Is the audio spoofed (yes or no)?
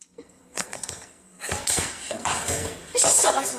yes